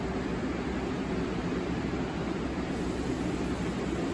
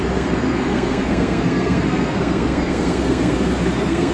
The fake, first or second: second